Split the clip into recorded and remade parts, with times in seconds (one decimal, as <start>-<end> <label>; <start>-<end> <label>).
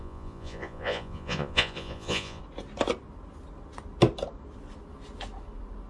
0.0-2.4 remade; 2.4-5.9 recorded